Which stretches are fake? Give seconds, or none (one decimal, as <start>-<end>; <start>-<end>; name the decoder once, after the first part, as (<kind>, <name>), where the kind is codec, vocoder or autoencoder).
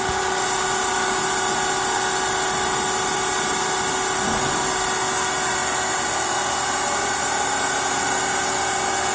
none